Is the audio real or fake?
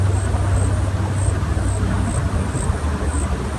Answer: real